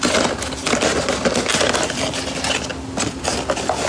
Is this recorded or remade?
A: recorded